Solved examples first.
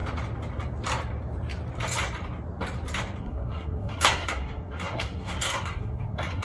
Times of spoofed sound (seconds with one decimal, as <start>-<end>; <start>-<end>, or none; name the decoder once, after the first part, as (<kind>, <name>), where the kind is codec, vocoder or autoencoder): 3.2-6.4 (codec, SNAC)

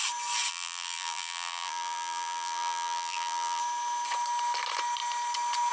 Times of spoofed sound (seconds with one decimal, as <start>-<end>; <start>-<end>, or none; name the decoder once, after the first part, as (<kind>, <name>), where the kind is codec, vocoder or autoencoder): 0.5-3.6 (vocoder, BigVGAN v2)

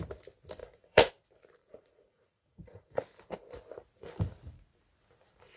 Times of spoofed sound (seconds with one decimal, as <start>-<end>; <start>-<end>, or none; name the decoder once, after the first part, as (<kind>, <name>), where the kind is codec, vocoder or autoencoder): 0.6-1.1 (vocoder, Vocos); 1.6-3.0